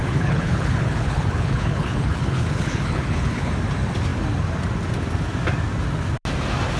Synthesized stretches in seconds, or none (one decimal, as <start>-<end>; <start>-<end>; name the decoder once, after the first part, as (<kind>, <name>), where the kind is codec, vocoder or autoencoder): 0.0-3.5 (codec, HILCodec)